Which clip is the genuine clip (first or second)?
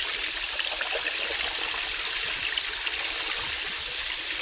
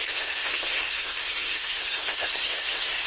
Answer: first